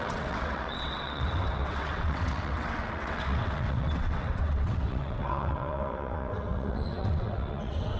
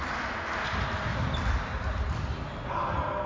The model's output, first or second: first